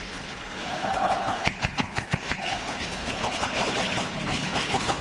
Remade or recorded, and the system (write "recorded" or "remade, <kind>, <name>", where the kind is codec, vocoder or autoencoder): remade, codec, HILCodec